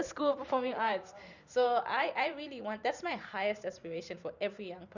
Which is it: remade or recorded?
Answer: remade